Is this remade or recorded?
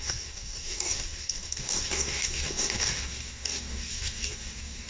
remade